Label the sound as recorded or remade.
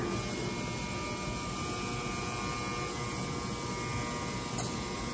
recorded